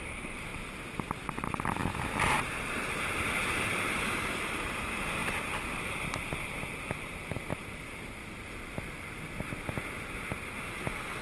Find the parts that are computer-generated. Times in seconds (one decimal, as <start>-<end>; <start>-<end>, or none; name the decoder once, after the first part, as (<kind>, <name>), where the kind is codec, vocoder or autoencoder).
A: 0.0-0.5 (vocoder, BigVGAN v2); 1.0-5.2; 7.5-8.2

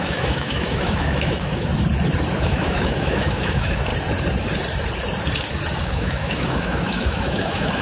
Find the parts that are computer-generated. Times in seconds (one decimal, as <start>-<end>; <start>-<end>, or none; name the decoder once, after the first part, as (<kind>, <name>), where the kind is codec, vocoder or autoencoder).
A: 0.0-1.7 (autoencoder, DAC-VAE); 2.4-3.9; 5.8-7.8

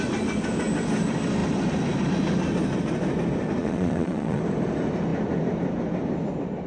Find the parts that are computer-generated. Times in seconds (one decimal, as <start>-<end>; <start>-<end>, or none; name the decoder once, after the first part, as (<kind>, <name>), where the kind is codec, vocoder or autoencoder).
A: 3.6-4.4 (vocoder, Vocos)

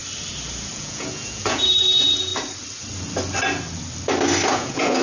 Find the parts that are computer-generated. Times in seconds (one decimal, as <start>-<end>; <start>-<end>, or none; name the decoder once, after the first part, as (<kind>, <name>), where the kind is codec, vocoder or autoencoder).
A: 0.7-2.3 (vocoder, Vocos); 4.5-5.0

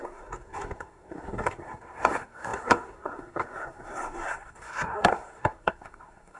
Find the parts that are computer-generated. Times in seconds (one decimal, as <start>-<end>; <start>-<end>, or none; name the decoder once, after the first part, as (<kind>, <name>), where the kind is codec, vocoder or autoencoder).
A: 0.0-6.4 (codec, SNAC)